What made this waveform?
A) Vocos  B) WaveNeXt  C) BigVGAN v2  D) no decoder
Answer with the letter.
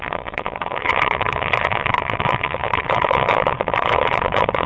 B